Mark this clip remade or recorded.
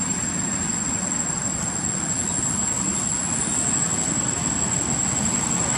recorded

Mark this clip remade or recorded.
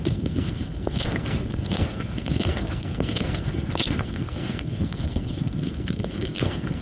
remade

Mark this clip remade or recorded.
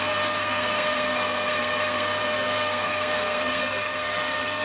remade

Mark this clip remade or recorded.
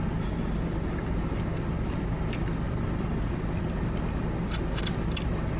recorded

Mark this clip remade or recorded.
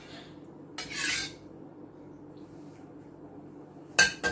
recorded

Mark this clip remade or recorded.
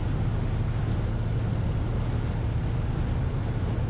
recorded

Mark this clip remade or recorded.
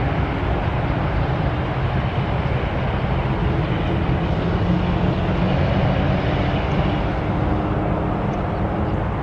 recorded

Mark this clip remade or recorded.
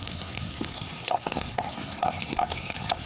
remade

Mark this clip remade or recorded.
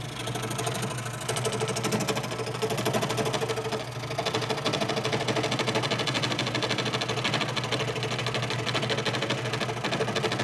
recorded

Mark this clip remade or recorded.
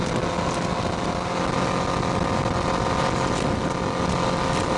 recorded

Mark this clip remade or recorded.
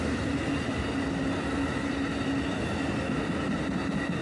recorded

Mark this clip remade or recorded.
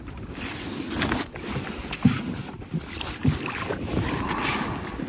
recorded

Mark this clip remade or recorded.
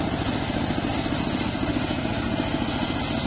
recorded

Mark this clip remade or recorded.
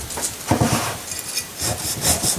recorded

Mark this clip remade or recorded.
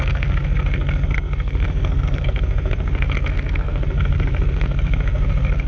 remade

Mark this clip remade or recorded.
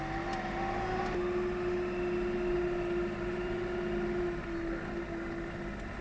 recorded